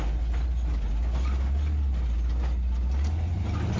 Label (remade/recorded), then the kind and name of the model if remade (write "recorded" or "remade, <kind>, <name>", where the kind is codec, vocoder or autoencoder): recorded